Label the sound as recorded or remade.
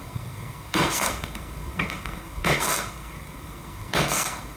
remade